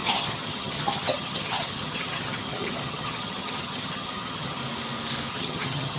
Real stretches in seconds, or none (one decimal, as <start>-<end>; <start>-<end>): 4.6-5.3